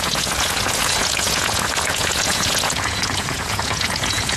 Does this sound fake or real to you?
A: fake